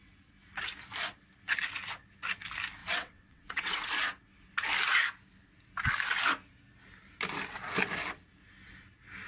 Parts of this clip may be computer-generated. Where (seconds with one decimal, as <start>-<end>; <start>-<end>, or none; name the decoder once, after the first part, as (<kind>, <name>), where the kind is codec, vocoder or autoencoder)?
2.8-3.9 (vocoder, WaveNeXt)